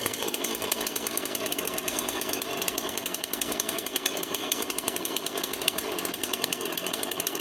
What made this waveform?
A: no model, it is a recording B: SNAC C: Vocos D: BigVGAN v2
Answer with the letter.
B